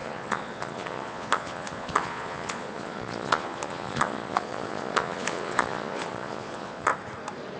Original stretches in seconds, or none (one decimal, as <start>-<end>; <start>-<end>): 6.9-7.6